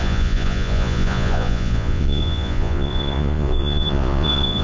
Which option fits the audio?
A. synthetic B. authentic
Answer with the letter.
A